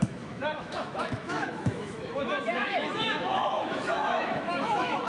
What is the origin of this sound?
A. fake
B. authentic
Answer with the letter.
A